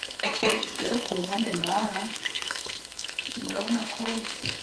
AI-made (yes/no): yes